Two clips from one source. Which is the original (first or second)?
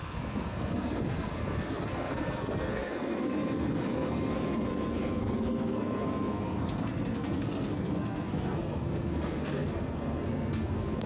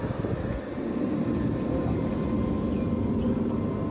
second